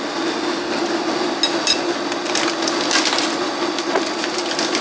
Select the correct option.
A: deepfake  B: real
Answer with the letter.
B